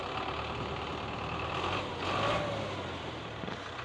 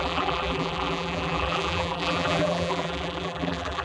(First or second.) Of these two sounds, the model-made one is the second